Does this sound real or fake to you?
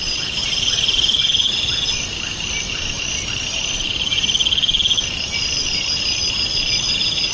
real